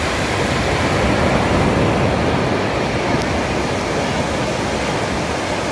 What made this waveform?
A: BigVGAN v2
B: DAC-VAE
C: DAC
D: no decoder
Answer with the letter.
D